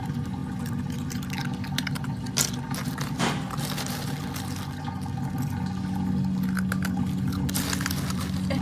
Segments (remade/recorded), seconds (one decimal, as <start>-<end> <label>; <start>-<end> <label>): 0.0-8.6 recorded